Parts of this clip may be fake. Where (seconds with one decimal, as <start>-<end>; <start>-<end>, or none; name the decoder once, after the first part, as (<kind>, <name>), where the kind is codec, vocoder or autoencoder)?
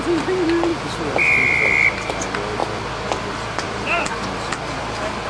0.7-1.6 (vocoder, BigVGAN v2); 2.6-4.8